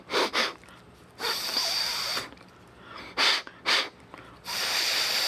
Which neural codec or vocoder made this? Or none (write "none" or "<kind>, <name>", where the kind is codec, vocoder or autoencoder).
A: none